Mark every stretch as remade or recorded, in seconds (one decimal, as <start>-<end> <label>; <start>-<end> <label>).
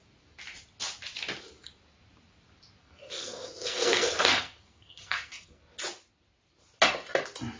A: 0.0-2.8 recorded; 2.8-5.6 remade; 5.6-7.6 recorded